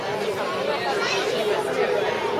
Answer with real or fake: real